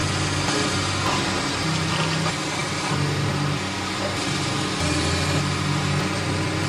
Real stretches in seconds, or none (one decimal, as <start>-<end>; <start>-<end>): 0.0-6.7